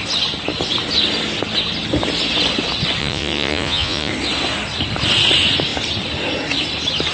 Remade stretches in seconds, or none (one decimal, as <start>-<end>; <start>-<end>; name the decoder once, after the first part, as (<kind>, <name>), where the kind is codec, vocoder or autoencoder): 3.0-4.1 (vocoder, Vocos)